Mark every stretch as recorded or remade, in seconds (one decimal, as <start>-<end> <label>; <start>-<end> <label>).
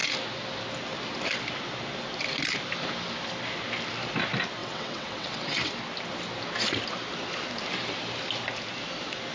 0.0-4.6 recorded; 4.6-5.7 remade; 5.7-9.3 recorded